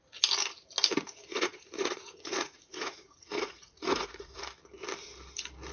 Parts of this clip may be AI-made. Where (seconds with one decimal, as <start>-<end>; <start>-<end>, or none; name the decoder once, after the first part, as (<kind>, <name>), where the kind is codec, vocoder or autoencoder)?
1.2-4.4 (vocoder, Vocos)